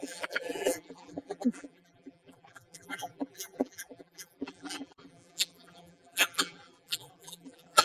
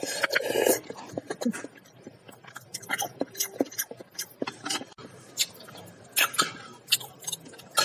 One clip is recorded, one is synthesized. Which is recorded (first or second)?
second